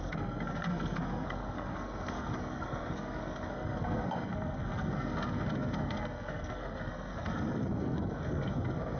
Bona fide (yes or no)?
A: no